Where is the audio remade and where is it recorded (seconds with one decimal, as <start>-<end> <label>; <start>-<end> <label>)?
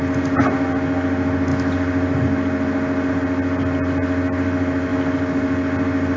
0.0-6.2 recorded